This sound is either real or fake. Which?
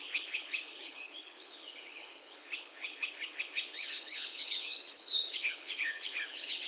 fake